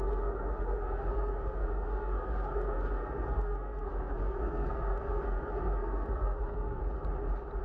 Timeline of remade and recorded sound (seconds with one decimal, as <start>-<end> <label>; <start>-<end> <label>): 0.0-6.8 remade; 6.8-7.6 recorded